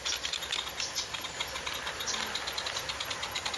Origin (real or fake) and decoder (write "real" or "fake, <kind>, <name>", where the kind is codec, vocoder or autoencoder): real